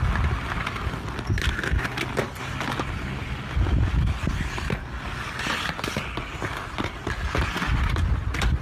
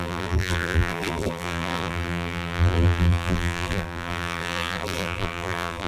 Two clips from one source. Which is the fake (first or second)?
second